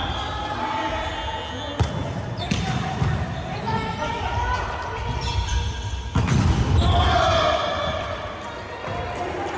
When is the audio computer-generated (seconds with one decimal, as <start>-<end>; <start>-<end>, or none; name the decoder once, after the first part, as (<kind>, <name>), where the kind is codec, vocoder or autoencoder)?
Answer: none